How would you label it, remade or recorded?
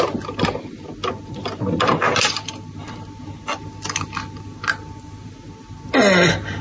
recorded